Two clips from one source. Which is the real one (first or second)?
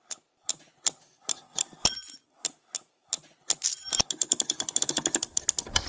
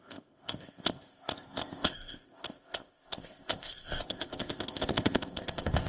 first